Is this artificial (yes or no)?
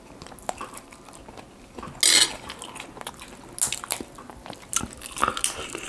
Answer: no